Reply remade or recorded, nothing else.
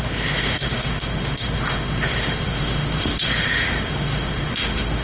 remade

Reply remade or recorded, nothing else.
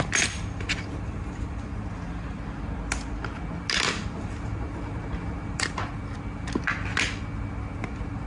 recorded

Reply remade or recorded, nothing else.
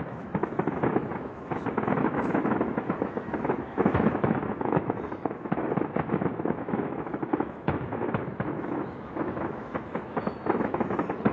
remade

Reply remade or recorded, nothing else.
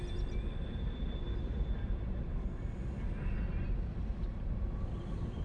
recorded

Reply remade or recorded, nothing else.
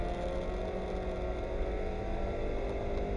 recorded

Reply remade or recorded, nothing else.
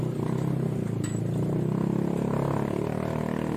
recorded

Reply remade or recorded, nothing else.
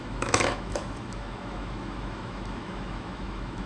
remade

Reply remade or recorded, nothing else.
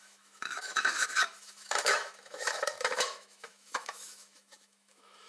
remade